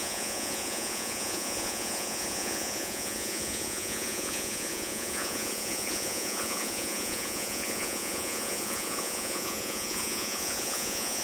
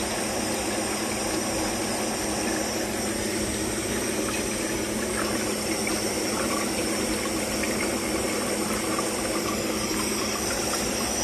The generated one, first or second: first